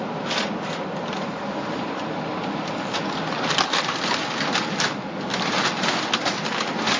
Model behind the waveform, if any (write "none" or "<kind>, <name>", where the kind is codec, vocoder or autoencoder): none